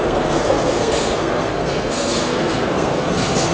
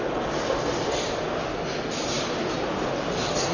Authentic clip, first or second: second